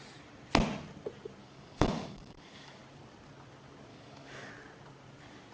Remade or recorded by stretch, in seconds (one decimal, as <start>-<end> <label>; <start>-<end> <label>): 0.0-1.4 recorded; 1.4-2.8 remade; 2.8-3.9 recorded; 3.9-4.5 remade; 4.5-5.5 recorded